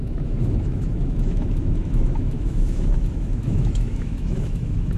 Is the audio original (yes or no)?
no